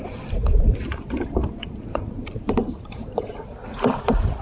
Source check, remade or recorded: remade